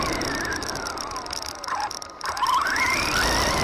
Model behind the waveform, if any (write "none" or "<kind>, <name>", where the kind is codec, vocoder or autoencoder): none